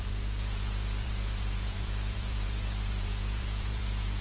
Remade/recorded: remade